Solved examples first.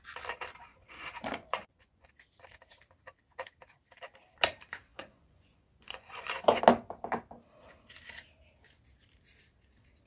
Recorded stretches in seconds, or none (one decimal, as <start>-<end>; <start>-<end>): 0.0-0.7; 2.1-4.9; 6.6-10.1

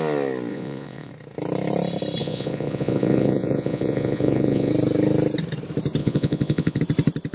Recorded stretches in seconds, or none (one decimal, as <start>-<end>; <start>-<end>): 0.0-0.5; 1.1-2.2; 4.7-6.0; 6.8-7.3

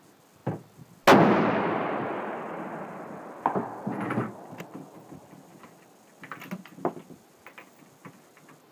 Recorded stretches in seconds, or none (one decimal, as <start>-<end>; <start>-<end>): 0.0-8.7

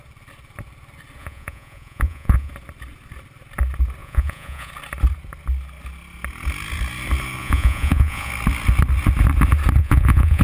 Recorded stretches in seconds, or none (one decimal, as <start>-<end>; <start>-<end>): 0.0-1.2; 2.5-4.0; 4.7-7.4; 8.3-9.8

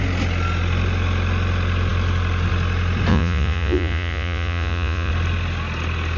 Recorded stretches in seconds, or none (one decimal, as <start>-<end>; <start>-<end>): 0.0-3.1; 5.1-6.2